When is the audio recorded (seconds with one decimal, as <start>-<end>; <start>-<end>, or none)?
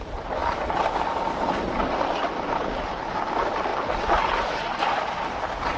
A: 0.0-5.8